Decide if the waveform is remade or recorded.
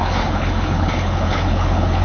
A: remade